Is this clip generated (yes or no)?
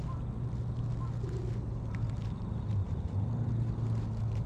no